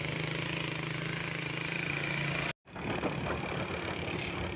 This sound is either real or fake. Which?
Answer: real